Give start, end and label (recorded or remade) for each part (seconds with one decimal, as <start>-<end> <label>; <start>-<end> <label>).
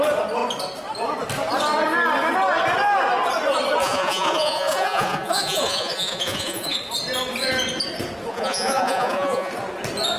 0.0-3.8 recorded; 3.8-6.8 remade; 6.8-8.3 recorded; 8.3-9.5 remade; 9.5-10.2 recorded